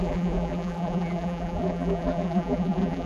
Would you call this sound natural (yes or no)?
no